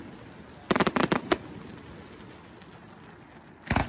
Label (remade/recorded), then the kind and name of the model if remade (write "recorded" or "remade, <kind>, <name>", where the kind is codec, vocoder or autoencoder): recorded